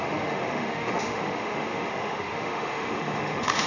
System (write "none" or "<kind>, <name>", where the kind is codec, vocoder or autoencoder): autoencoder, DAC-VAE